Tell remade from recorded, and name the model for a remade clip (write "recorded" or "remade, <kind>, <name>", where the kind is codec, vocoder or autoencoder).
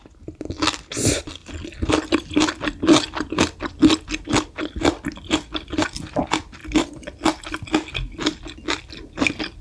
recorded